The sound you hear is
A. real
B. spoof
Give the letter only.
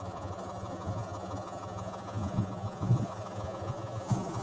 B